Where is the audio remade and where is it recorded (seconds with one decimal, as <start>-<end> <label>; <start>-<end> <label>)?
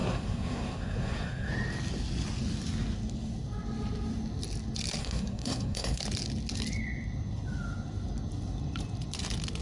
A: 0.0-1.5 remade; 1.5-5.0 recorded; 5.0-6.0 remade; 6.0-9.6 recorded